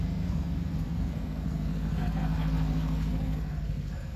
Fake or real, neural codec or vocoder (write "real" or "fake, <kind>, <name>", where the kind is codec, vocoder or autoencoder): fake, codec, SNAC